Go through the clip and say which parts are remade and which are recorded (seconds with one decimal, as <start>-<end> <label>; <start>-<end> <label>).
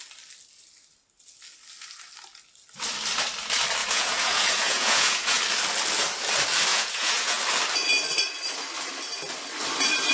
0.0-3.8 recorded; 3.8-5.4 remade; 5.4-6.7 recorded; 6.7-7.4 remade; 7.4-10.1 recorded